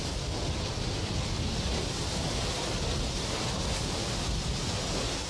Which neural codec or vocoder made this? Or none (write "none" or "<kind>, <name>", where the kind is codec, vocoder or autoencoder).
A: none